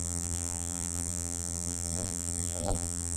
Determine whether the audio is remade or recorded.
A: remade